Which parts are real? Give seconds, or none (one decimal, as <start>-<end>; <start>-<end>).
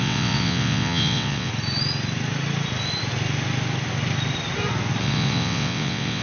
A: 1.5-5.0